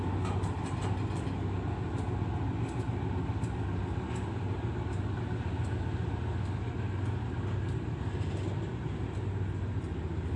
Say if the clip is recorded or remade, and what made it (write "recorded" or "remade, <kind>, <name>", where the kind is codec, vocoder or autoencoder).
recorded